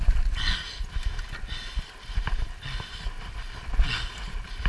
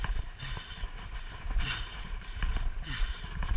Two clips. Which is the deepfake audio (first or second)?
second